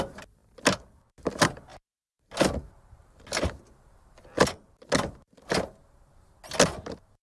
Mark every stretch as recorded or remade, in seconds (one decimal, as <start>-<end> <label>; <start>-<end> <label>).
0.0-7.2 recorded